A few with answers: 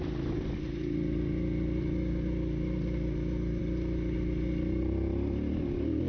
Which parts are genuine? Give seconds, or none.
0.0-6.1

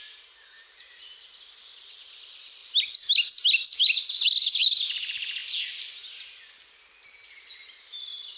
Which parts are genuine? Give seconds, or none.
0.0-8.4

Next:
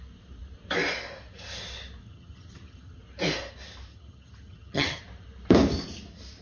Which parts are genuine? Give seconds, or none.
0.0-2.0; 3.0-3.9; 5.0-6.4

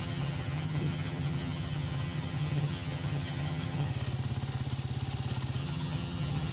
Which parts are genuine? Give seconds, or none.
3.9-5.6

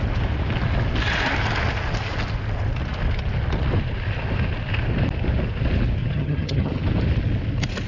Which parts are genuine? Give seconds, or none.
0.0-6.0; 6.7-7.9